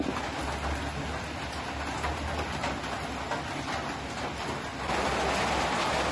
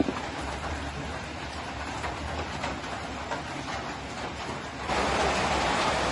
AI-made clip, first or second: second